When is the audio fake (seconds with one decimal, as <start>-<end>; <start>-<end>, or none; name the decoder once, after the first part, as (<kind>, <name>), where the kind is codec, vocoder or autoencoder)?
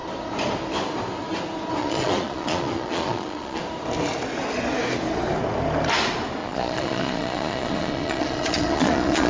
1.8-3.6 (vocoder, Vocos); 6.4-9.3